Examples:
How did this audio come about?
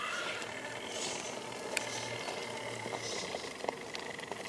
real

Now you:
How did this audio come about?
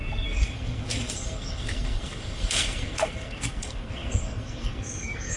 fake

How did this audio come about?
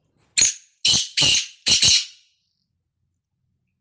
real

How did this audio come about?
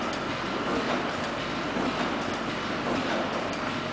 real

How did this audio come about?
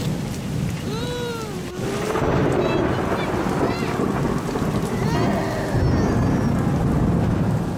real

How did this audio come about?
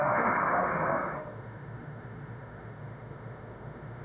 fake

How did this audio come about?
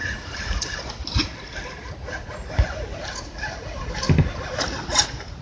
real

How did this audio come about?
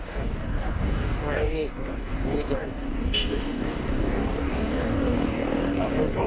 fake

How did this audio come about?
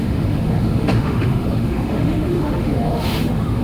fake